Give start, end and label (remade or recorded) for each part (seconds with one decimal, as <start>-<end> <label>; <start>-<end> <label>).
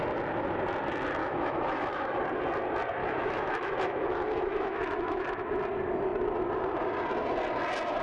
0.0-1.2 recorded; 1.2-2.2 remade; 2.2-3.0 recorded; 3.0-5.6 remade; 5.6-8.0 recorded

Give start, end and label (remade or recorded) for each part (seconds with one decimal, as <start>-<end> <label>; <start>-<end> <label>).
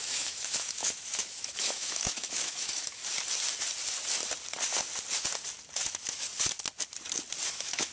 0.0-3.0 remade; 3.0-5.8 recorded; 5.8-6.3 remade; 6.3-7.5 recorded; 7.5-7.9 remade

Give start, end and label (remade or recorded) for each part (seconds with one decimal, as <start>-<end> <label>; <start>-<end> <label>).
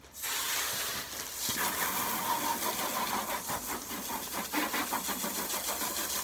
0.0-6.2 recorded